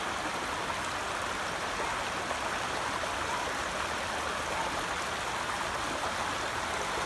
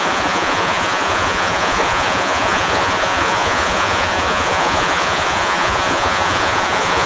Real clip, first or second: first